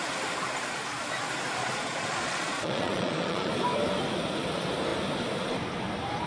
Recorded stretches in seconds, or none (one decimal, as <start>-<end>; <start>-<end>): 0.0-1.6; 3.5-6.3

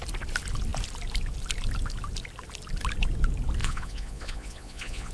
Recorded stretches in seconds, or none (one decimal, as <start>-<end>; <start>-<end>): 0.0-3.6

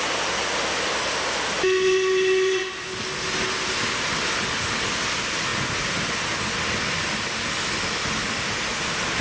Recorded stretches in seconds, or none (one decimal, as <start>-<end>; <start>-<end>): 0.0-9.2

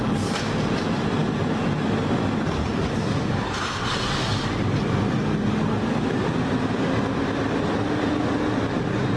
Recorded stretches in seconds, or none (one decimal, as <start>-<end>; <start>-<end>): 0.0-9.2

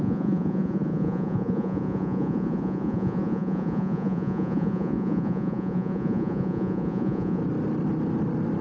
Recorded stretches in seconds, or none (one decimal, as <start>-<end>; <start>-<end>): 7.4-8.6

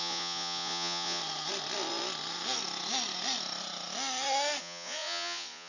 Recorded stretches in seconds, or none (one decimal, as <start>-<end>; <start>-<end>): 1.2-4.6

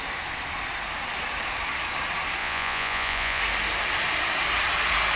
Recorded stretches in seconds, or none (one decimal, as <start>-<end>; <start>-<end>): 0.0-2.4; 3.4-5.2

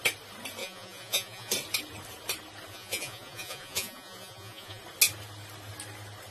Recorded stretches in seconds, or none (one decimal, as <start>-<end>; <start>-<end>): 0.0-0.6; 1.5-2.7; 4.8-6.3